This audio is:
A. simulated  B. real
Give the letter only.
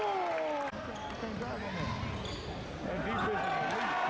B